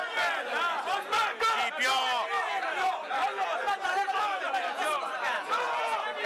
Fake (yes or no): no